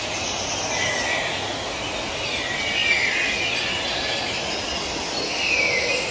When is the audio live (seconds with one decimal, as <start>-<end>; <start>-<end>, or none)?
0.0-6.1